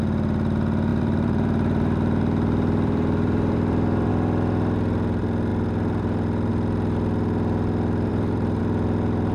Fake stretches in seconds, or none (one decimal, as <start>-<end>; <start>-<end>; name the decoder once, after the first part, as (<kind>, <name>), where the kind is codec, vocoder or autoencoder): 0.9-4.1 (vocoder, BigVGAN v2); 8.1-8.6